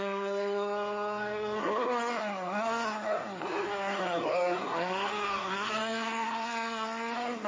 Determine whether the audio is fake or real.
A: fake